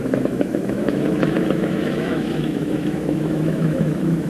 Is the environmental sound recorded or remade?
remade